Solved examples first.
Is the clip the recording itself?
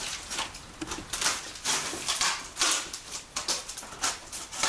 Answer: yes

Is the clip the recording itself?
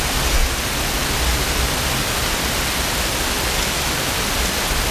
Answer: yes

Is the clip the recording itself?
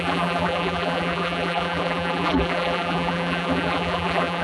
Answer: no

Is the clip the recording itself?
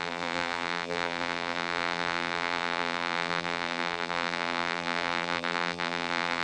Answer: no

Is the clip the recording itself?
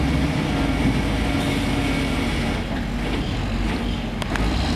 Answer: yes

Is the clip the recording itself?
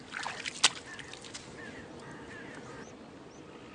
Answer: yes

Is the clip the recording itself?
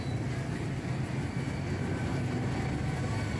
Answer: yes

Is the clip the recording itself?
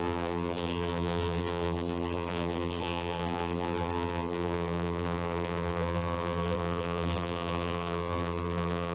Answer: no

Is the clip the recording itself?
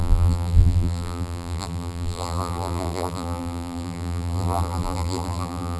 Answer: no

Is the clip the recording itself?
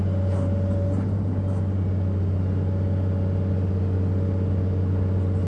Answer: yes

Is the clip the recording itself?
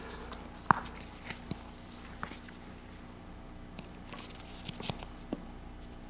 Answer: yes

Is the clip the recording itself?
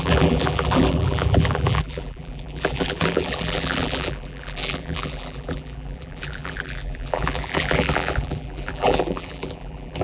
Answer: no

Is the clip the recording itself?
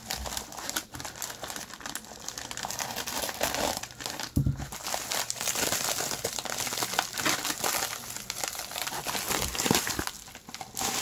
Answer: no